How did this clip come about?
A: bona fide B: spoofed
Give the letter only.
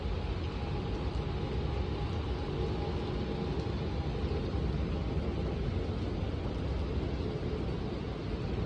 A